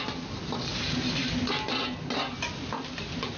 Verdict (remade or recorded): recorded